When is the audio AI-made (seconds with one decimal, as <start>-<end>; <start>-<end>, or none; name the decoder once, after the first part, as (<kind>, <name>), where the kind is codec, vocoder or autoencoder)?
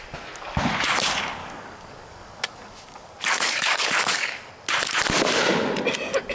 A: 1.4-4.5 (codec, DAC)